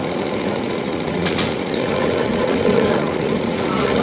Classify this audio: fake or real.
fake